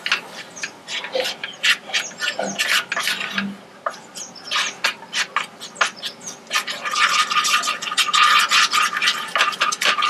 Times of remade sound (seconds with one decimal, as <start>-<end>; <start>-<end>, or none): 9.0-9.6